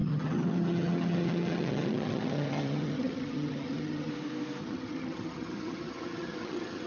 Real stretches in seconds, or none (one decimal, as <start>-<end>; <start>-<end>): 4.1-4.6